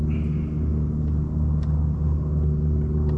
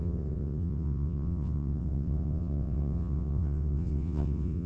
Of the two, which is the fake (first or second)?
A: second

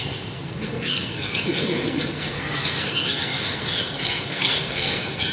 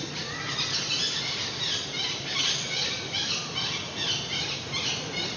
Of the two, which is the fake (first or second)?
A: first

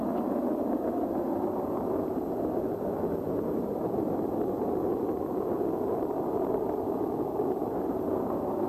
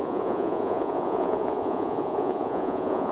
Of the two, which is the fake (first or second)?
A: second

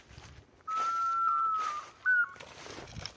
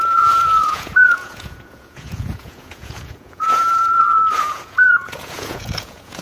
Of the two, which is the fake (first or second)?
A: second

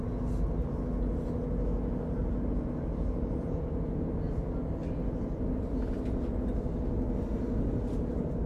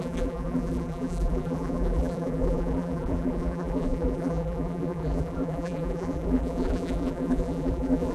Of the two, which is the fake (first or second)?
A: second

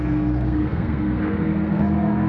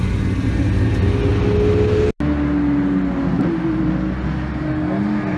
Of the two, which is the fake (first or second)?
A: first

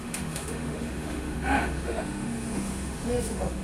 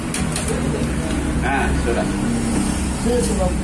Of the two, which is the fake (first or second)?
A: first